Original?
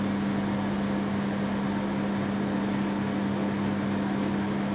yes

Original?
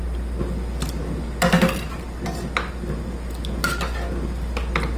yes